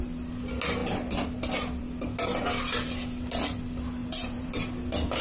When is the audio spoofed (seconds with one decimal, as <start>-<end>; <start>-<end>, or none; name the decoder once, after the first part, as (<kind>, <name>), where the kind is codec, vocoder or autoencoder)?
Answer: 4.0-4.5 (vocoder, BigVGAN v2)